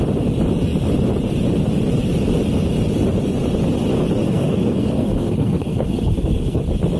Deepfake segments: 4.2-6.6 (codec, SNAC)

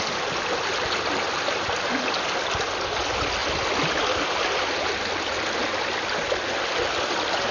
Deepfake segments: none

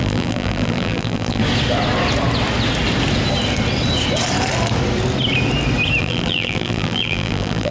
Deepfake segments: 0.0-1.4 (vocoder, BigVGAN v2); 6.0-7.7

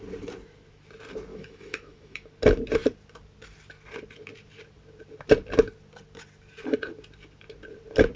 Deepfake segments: 1.3-2.3 (autoencoder, DAC-VAE)

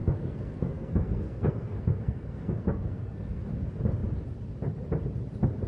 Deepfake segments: 0.0-3.4 (codec, SNAC)

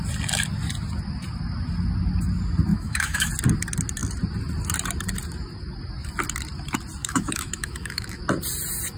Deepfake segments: 2.7-3.3 (autoencoder, DAC-VAE); 7.0-8.2

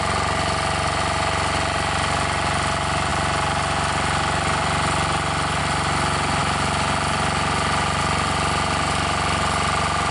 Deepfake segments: none